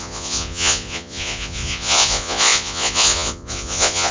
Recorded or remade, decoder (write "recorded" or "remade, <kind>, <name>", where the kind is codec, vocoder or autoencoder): remade, vocoder, Vocos